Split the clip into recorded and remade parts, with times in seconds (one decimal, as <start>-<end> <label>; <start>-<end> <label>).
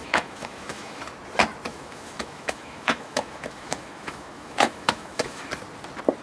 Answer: 0.0-1.0 remade; 1.0-1.7 recorded; 1.7-5.4 remade; 5.4-6.2 recorded